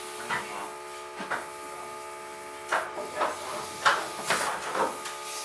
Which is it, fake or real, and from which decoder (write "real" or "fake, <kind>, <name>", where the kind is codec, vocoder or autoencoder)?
real